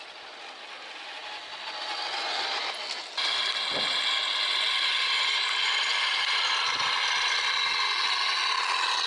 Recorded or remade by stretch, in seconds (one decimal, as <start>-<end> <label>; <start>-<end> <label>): 0.0-5.9 recorded; 5.9-7.7 remade; 7.7-9.1 recorded